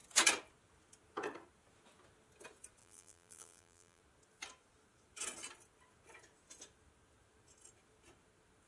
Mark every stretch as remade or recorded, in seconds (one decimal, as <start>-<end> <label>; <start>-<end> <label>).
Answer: 0.0-2.8 recorded; 2.8-4.0 remade; 4.0-8.7 recorded